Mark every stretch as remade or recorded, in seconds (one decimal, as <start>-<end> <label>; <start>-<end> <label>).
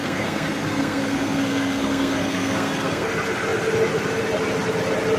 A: 0.0-3.1 remade; 3.1-5.2 recorded